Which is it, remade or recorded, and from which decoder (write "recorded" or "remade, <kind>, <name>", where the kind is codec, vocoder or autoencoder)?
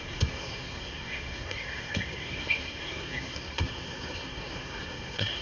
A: remade, codec, SNAC